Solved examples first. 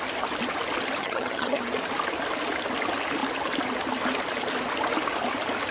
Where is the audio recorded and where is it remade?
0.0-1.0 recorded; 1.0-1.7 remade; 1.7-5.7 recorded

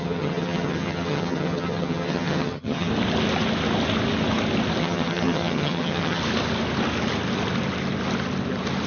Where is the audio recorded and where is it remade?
0.0-2.9 remade; 2.9-4.8 recorded; 4.8-6.2 remade; 6.2-8.9 recorded

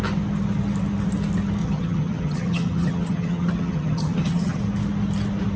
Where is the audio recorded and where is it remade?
0.0-1.6 recorded; 1.6-4.6 remade; 4.6-5.6 recorded

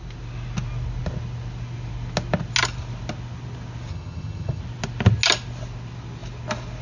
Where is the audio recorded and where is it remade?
0.0-3.9 recorded; 3.9-4.6 remade; 4.6-6.8 recorded